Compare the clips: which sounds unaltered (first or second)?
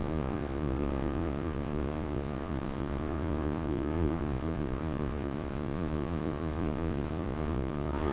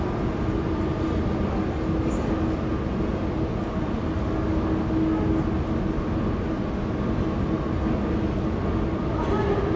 second